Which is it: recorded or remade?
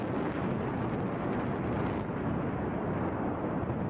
recorded